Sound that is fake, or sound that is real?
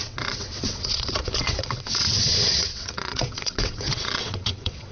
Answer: fake